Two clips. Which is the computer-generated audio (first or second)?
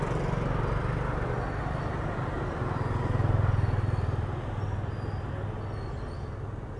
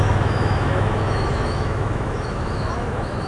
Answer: second